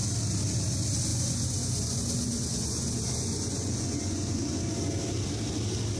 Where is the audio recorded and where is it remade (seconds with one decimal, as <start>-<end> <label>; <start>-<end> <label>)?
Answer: 0.0-1.1 recorded; 1.1-4.7 remade; 4.7-6.0 recorded